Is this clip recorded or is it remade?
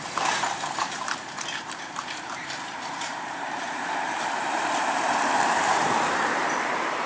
remade